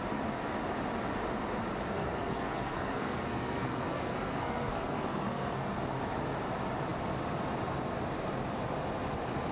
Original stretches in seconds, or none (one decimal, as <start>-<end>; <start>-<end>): 0.0-1.9; 5.8-9.5